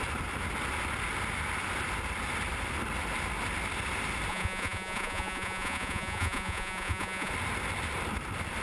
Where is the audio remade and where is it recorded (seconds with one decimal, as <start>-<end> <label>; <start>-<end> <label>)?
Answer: 0.0-4.3 recorded; 4.3-7.3 remade; 7.3-8.6 recorded